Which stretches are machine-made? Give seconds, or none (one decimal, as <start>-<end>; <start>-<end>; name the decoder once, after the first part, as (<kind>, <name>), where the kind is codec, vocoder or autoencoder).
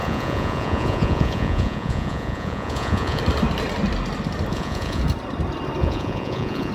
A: 0.0-3.2 (vocoder, Vocos); 4.5-5.0; 5.8-6.7